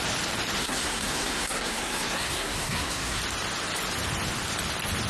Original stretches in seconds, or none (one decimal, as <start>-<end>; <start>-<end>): 0.0-0.6; 3.2-5.1